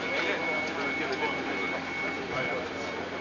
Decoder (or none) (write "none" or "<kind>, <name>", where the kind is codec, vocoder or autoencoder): none